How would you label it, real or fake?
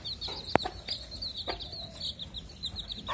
real